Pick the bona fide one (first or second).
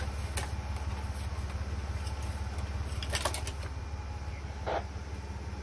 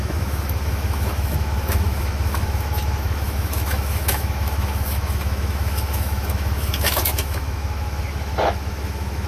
first